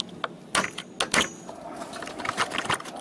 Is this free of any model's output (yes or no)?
yes